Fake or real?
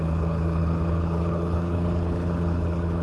fake